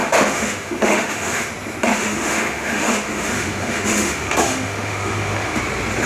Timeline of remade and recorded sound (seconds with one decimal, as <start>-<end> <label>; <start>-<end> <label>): 0.0-1.5 remade; 1.5-1.9 recorded; 1.9-5.6 remade; 5.6-6.1 recorded